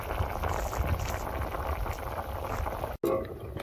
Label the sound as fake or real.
real